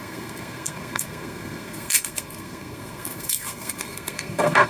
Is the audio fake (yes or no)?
yes